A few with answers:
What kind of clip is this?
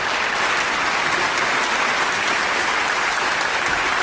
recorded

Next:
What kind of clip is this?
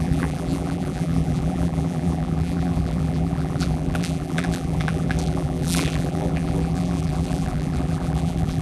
remade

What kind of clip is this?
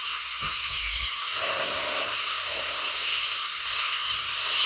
remade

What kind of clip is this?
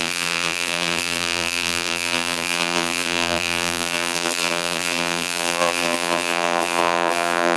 remade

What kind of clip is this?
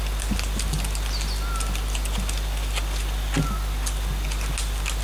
recorded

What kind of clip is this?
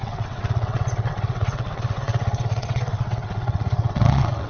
remade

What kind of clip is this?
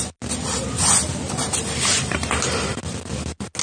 recorded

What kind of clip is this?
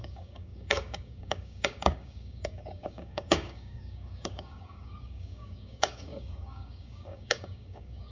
remade